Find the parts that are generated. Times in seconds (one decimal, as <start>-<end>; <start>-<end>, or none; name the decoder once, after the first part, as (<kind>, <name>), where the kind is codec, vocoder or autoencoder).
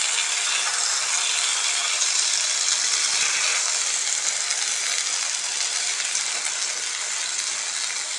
none